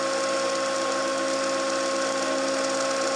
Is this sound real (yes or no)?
yes